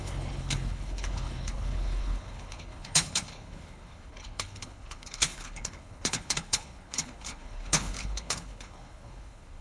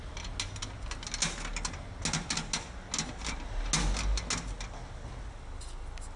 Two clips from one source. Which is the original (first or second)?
second